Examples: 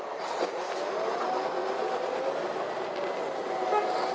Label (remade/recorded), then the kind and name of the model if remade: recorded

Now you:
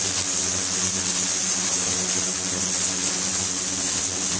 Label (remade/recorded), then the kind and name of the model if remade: recorded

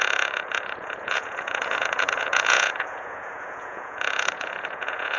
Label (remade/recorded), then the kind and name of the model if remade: remade, vocoder, Vocos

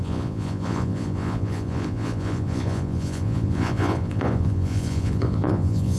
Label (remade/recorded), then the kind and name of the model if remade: remade, vocoder, Vocos